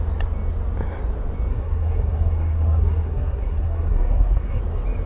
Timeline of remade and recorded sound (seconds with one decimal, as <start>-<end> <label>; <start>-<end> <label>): 0.0-1.5 recorded; 1.5-4.6 remade; 4.6-5.1 recorded